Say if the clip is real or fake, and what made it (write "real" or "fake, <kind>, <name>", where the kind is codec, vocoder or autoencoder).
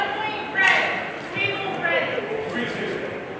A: real